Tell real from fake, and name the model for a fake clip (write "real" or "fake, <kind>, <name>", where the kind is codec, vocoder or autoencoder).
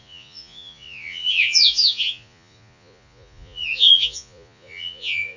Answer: fake, vocoder, Vocos